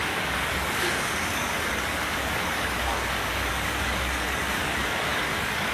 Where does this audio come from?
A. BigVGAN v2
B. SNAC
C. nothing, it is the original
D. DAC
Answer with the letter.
D